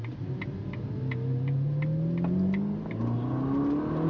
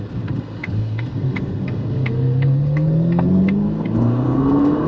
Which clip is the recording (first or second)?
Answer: first